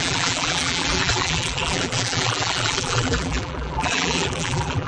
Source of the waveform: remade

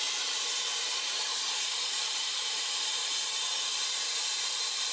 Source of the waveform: remade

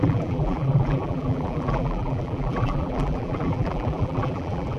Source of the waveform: remade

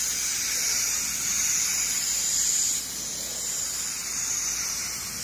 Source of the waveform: recorded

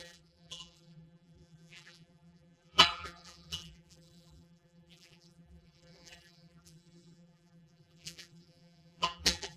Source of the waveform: remade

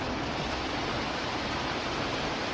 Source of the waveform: recorded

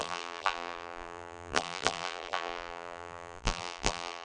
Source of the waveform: remade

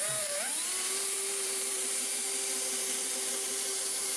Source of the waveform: remade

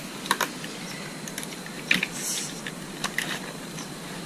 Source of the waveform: recorded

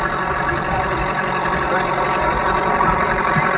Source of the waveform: remade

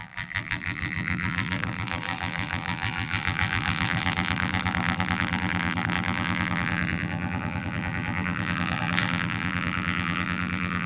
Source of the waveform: remade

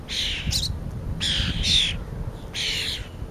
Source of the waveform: recorded